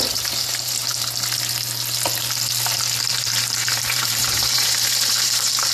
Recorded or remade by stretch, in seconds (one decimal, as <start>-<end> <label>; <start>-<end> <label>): 0.0-0.9 remade; 0.9-3.1 recorded; 3.1-5.7 remade